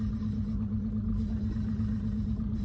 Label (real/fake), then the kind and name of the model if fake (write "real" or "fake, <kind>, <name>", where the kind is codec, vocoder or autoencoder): real